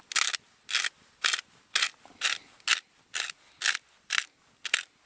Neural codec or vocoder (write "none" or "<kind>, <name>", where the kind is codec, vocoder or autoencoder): none